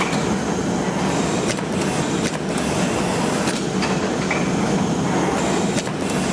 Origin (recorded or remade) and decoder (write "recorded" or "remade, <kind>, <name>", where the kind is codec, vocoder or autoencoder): recorded